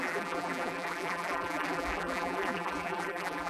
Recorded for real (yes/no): no